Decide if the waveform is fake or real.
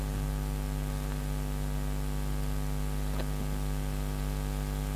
real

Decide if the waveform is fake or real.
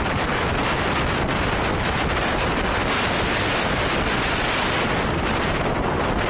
real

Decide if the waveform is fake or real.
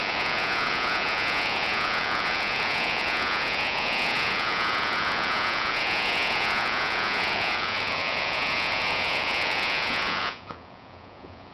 fake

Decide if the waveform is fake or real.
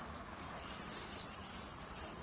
fake